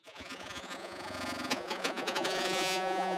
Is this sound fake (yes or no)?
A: yes